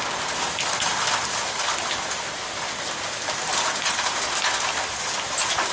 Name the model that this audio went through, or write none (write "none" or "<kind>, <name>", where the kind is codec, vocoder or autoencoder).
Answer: none